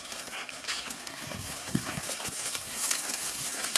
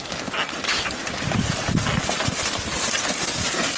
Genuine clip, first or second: second